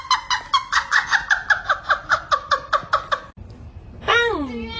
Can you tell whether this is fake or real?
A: real